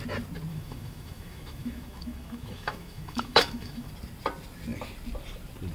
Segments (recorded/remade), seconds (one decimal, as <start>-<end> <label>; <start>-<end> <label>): 0.0-0.5 recorded; 0.5-3.9 remade; 3.9-5.7 recorded